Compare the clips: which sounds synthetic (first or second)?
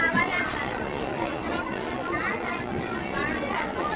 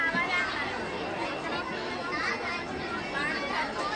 first